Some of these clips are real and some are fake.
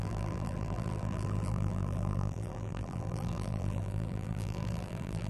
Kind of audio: fake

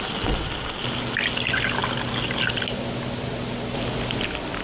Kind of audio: real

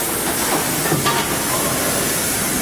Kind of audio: real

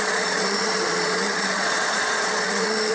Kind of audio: fake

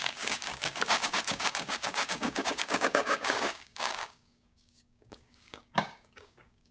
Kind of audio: fake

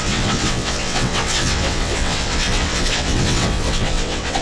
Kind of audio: fake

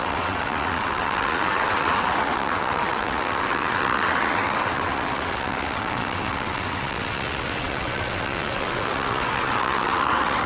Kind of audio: fake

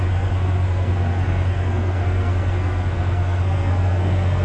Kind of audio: fake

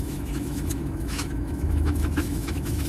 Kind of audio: fake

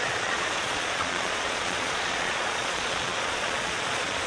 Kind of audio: fake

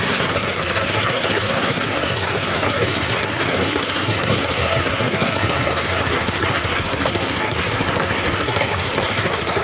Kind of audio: fake